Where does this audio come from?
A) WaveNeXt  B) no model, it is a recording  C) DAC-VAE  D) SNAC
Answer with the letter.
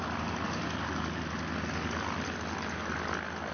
B